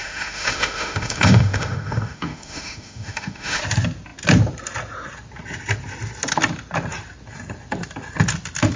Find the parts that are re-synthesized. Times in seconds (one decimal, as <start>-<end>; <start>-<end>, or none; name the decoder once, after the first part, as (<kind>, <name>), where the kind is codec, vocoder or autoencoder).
0.0-3.6 (autoencoder, DAC-VAE)